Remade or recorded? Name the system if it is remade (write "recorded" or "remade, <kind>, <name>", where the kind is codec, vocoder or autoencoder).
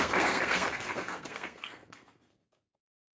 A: remade, codec, SNAC